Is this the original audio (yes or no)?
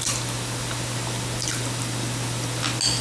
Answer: yes